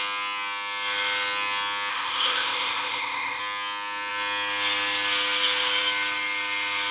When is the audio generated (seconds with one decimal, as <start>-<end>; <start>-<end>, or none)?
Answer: 1.9-3.4